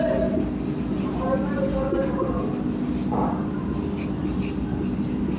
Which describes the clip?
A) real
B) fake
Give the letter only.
A